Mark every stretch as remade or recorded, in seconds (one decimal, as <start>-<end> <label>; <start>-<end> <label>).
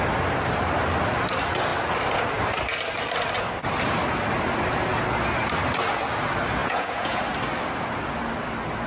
0.0-6.6 recorded; 6.6-7.2 remade; 7.2-8.9 recorded